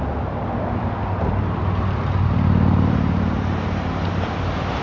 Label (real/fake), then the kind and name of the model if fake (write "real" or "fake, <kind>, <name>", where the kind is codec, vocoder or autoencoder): real